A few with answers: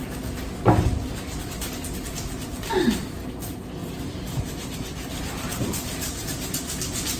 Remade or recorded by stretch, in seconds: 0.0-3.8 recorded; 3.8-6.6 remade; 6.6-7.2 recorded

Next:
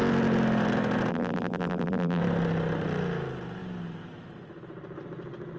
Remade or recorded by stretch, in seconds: 0.0-1.1 recorded; 1.1-2.2 remade; 2.2-5.6 recorded

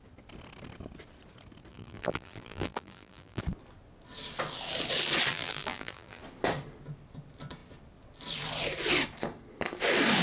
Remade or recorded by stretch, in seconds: 0.0-1.7 recorded; 1.7-3.4 remade; 3.4-5.3 recorded; 5.3-6.2 remade; 6.2-10.2 recorded

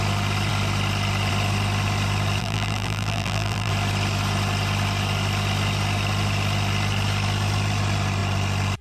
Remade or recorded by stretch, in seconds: 0.0-2.4 recorded; 2.4-3.7 remade; 3.7-8.8 recorded